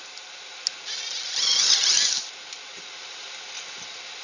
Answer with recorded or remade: recorded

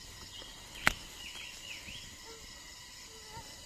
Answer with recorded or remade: recorded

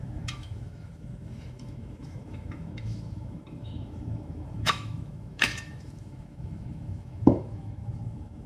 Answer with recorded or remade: remade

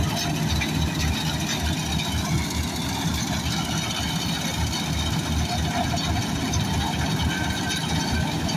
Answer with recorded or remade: recorded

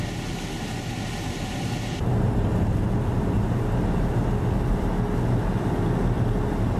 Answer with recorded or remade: recorded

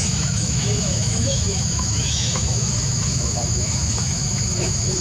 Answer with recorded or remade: remade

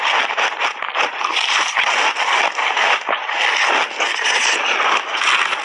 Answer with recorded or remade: recorded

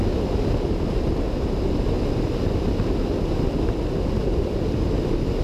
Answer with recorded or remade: recorded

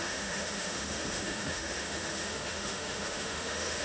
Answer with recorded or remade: remade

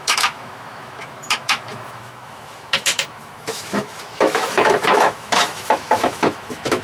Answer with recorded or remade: remade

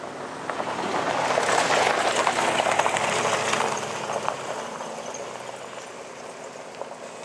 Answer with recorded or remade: recorded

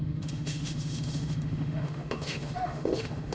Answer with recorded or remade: remade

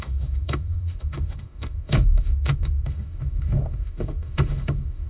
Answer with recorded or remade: remade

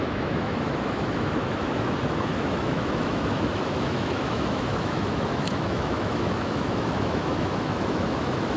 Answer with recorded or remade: remade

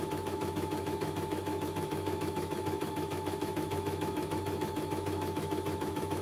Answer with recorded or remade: remade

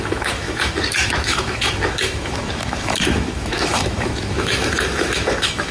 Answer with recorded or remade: remade